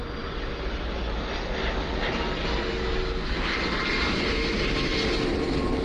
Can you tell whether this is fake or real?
real